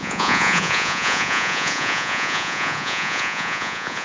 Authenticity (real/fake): fake